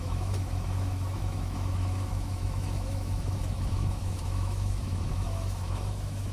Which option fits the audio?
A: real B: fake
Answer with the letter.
B